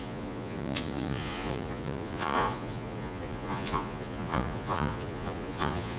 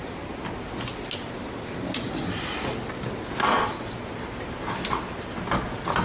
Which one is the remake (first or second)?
first